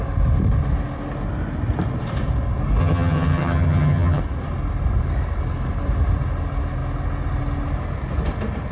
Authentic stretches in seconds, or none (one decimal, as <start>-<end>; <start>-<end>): 0.0-2.8; 4.2-8.7